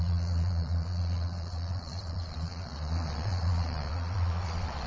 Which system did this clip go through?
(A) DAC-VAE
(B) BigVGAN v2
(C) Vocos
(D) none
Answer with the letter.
C